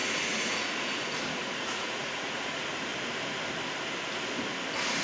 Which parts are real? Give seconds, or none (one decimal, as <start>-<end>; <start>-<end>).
2.9-5.0